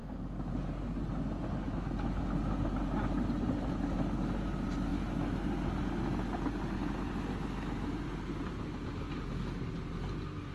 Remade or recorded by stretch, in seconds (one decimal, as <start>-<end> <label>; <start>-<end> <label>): 0.0-10.5 recorded